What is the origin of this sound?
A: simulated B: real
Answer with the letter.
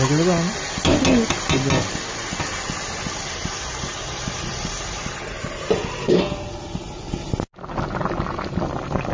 B